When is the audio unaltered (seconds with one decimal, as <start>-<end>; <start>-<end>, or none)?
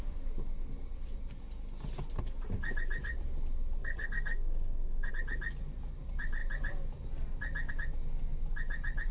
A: 0.0-3.8; 5.1-9.1